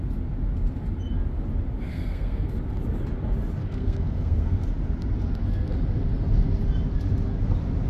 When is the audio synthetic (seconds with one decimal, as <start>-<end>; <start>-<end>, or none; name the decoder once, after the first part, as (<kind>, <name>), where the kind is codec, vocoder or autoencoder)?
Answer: 1.9-2.5 (codec, SNAC); 3.6-4.6